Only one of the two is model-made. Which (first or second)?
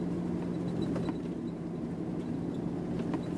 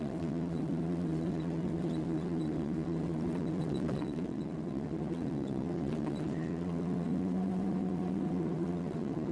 second